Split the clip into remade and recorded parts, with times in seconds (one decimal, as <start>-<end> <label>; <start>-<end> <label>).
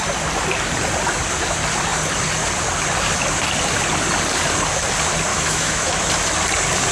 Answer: 0.0-5.3 recorded; 5.3-6.1 remade; 6.1-6.9 recorded